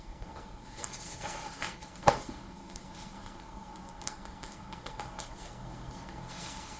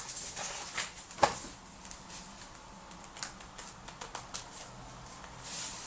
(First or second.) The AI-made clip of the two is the first